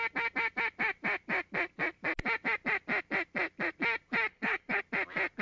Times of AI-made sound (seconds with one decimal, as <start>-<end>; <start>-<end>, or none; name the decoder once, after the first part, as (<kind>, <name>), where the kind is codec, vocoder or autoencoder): 4.3-4.8 (codec, HILCodec)